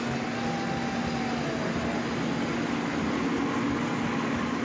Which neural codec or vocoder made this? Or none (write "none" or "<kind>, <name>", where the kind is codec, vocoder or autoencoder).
none